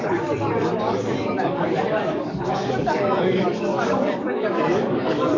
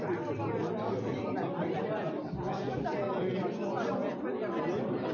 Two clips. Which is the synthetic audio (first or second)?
first